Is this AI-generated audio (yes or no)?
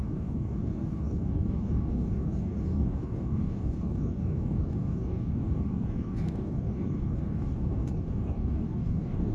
yes